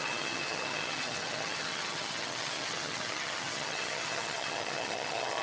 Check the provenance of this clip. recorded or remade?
remade